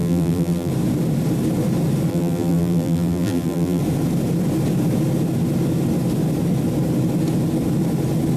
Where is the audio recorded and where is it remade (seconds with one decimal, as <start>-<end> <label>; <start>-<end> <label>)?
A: 0.0-0.7 remade; 0.7-2.1 recorded; 2.1-3.8 remade; 3.8-8.4 recorded